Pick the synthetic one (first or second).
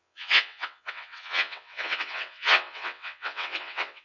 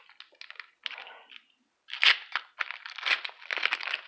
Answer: first